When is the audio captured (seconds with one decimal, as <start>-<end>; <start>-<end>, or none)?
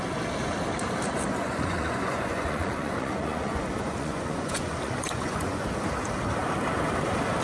0.0-1.3; 5.7-7.4